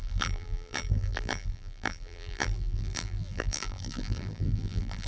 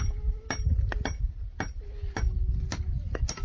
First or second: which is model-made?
first